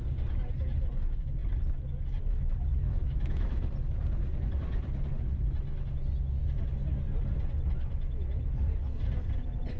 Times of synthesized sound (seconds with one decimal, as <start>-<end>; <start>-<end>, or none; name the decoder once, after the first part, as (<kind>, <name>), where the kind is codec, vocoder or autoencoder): 2.7-3.7 (autoencoder, DAC-VAE)